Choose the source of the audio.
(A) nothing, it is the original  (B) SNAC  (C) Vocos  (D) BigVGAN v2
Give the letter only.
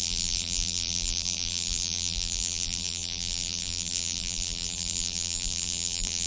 D